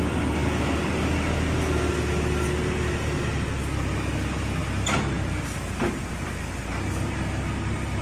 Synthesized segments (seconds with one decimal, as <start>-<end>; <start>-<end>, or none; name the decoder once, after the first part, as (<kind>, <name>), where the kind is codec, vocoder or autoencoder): none